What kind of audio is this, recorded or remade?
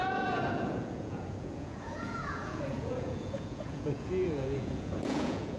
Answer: remade